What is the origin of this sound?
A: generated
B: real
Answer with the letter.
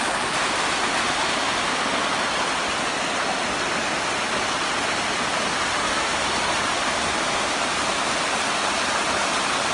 B